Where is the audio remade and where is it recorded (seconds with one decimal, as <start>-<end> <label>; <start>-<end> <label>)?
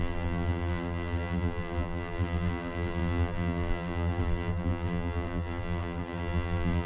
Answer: 0.0-6.9 remade